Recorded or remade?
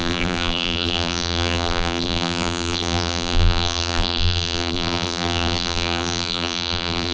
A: remade